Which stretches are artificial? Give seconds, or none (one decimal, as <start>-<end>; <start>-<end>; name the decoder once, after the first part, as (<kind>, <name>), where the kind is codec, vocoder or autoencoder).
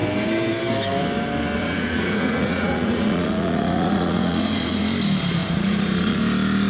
1.6-4.8 (vocoder, Vocos); 5.4-6.2